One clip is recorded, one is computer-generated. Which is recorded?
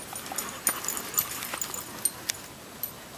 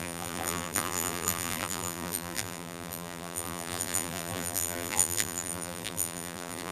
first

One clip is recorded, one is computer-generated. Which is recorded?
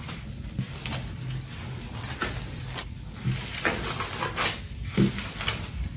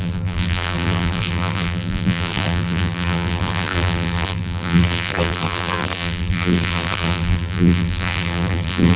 first